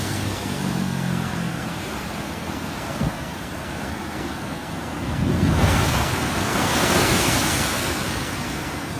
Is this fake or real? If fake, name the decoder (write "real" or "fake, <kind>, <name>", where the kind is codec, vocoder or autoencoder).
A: fake, codec, SNAC